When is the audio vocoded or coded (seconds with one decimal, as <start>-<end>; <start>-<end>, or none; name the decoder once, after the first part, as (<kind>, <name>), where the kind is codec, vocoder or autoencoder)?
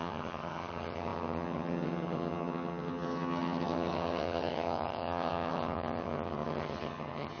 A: 0.0-7.4 (vocoder, HiFi-GAN)